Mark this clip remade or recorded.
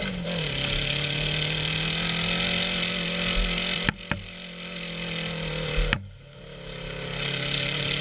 recorded